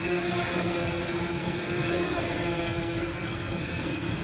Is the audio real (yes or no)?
no